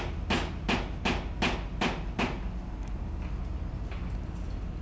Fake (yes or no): no